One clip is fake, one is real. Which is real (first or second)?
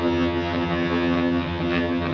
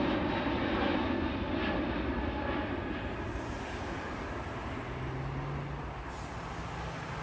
second